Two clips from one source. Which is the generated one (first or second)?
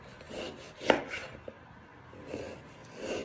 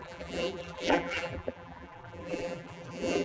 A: second